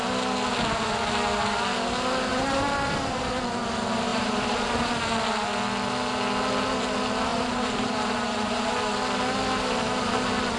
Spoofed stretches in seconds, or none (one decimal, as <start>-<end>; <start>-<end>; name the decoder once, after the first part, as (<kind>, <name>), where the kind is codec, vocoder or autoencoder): 2.3-3.4 (vocoder, BigVGAN v2); 4.1-4.9; 7.3-8.7